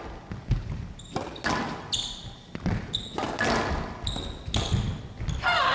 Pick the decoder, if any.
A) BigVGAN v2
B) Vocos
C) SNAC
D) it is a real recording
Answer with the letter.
D